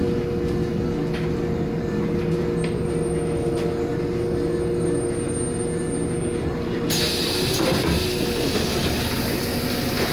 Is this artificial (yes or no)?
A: no